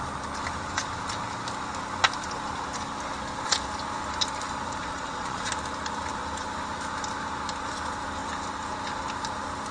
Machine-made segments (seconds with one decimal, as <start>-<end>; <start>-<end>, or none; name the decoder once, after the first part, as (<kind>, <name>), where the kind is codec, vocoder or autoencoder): 4.8-5.5 (vocoder, Vocos)